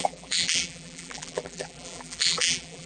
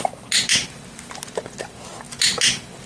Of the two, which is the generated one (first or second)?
first